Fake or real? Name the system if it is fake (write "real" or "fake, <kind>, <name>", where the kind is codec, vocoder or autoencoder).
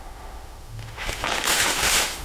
fake, autoencoder, DAC-VAE